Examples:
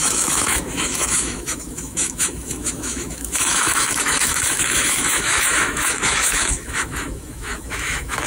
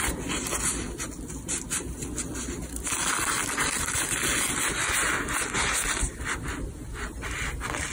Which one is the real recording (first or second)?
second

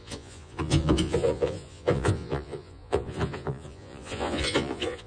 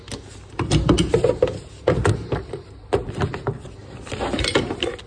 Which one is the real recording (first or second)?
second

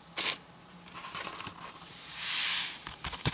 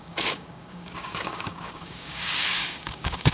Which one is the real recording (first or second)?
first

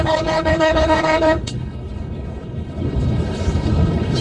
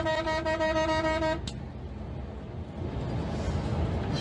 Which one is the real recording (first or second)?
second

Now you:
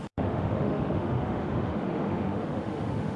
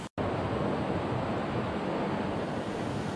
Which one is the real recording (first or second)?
second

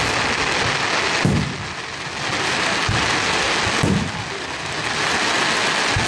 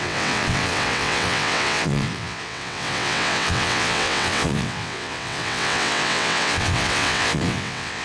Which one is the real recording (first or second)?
first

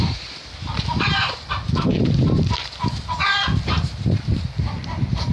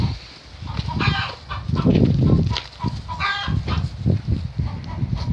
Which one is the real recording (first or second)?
second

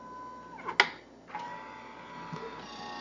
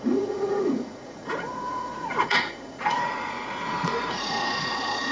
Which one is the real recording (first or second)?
first